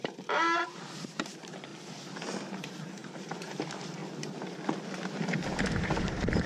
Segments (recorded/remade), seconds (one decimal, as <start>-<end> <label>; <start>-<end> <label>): 0.0-1.7 remade; 1.7-2.5 recorded; 2.5-4.0 remade; 4.0-6.0 recorded; 6.0-6.5 remade